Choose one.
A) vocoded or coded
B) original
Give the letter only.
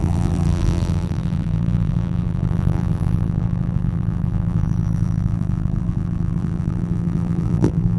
A